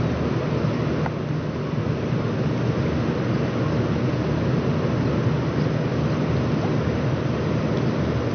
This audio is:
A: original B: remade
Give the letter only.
A